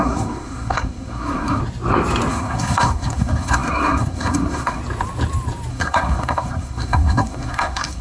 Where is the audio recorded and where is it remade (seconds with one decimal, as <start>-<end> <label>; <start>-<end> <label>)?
0.0-1.6 remade; 1.6-2.3 recorded; 2.3-4.8 remade; 4.8-5.7 recorded; 5.7-8.0 remade